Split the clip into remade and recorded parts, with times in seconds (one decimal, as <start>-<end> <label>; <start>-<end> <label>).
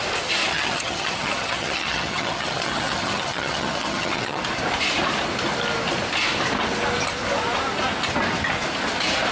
0.0-0.5 recorded; 0.5-4.4 remade; 4.4-9.3 recorded